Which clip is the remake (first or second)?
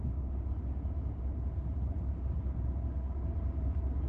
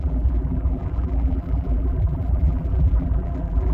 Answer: second